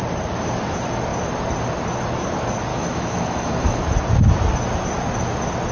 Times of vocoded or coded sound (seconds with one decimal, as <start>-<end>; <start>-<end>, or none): 2.7-3.8